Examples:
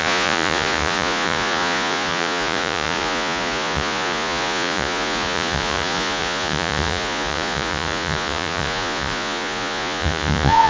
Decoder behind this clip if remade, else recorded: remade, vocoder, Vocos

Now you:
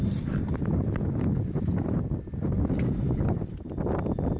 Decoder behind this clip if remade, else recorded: recorded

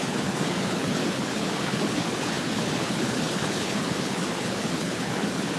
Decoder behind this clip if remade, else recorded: remade, codec, HILCodec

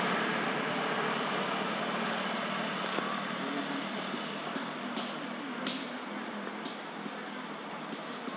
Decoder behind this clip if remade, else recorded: remade, vocoder, BigVGAN v2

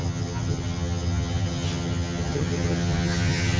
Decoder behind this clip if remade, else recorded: remade, vocoder, HiFi-GAN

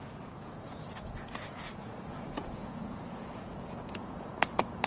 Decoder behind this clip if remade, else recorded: remade, vocoder, Vocos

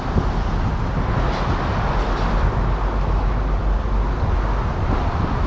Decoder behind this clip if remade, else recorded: recorded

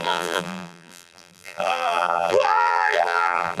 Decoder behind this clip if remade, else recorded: remade, vocoder, BigVGAN v2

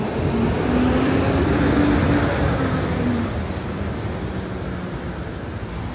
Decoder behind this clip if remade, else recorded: recorded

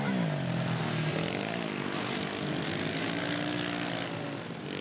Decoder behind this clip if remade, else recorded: recorded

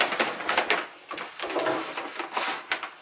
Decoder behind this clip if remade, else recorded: recorded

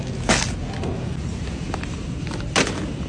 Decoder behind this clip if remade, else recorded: recorded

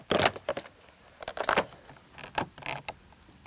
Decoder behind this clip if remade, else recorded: recorded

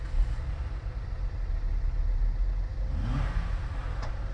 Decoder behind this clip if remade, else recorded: recorded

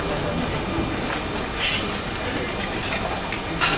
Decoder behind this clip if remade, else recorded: recorded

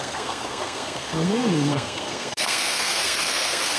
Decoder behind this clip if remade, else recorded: remade, codec, SNAC